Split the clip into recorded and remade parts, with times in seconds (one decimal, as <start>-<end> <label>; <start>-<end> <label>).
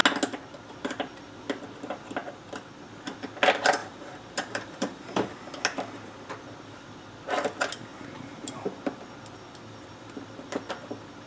0.0-3.8 recorded; 3.8-5.4 remade; 5.4-7.9 recorded; 7.9-8.5 remade; 8.5-11.3 recorded